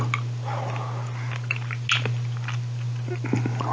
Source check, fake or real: real